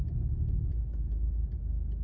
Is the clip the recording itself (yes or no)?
yes